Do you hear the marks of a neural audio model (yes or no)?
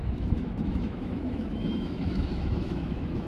yes